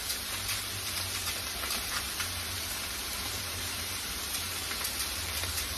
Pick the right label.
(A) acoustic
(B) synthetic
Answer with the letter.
B